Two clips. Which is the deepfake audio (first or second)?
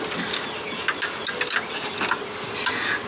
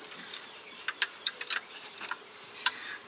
second